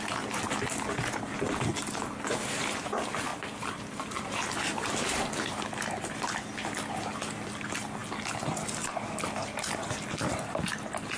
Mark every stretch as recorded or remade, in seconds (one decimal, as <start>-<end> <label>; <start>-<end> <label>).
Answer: 0.0-11.2 recorded